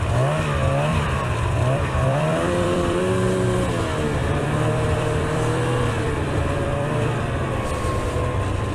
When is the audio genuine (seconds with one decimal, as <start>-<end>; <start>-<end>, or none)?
0.0-0.9; 3.0-4.2; 7.8-8.7

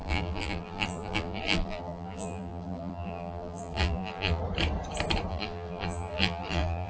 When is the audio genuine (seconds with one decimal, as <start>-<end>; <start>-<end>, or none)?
4.4-5.3

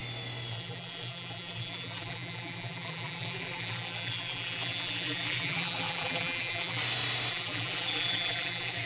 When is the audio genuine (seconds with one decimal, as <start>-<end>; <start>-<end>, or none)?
0.0-0.5; 6.8-7.3

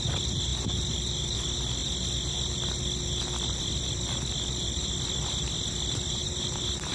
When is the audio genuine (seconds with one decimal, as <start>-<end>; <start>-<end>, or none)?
0.5-1.2; 1.8-3.6; 6.2-6.9

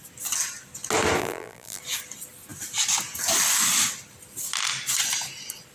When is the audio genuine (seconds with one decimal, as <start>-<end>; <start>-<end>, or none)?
0.0-1.2; 1.8-5.7